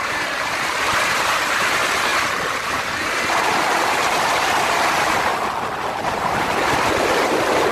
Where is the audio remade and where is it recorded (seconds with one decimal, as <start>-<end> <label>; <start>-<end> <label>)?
0.0-5.3 remade; 5.3-5.9 recorded; 5.9-7.7 remade